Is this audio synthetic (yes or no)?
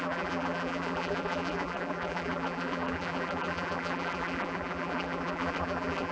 yes